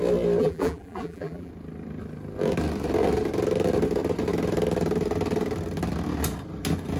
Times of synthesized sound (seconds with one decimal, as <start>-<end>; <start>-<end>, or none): 0.4-1.5